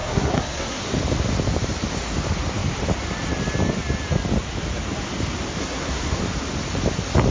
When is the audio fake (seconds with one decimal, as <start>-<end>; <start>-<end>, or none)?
0.0-0.8; 5.6-6.2